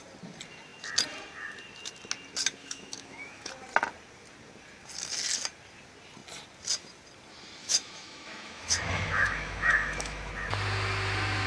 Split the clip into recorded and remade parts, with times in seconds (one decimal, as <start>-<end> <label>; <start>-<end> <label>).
0.0-2.6 recorded; 2.6-3.5 remade; 3.5-7.6 recorded; 7.6-10.3 remade; 10.3-11.5 recorded